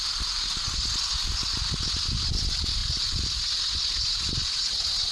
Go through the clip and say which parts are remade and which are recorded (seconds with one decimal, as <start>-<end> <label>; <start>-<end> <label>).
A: 0.0-5.1 recorded